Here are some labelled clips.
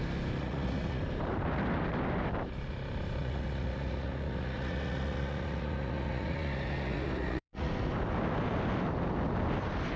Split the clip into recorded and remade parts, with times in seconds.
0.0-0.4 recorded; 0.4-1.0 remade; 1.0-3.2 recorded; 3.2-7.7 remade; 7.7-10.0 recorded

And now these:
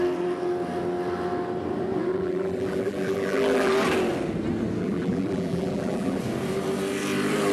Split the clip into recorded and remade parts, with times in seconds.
0.0-2.1 recorded; 2.1-3.7 remade; 3.7-4.8 recorded; 4.8-6.2 remade; 6.2-7.5 recorded